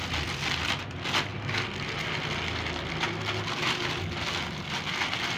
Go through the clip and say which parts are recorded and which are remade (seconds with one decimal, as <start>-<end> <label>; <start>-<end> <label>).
0.0-5.4 recorded